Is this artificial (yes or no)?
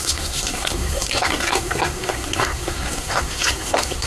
yes